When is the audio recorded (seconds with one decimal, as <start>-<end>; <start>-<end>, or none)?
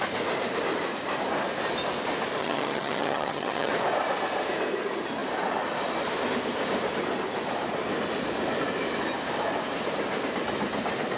0.0-2.4; 3.7-11.2